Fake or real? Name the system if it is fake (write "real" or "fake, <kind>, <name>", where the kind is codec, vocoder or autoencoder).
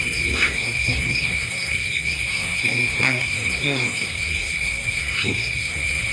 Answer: fake, codec, SNAC